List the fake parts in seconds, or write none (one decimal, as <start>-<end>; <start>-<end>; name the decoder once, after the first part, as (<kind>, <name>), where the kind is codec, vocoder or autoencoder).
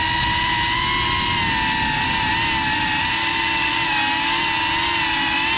3.2-4.4 (codec, DAC)